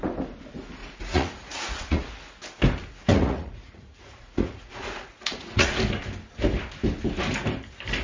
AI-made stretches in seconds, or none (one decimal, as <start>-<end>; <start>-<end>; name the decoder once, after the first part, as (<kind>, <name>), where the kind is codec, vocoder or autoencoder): 0.8-2.1 (vocoder, Vocos); 3.1-5.7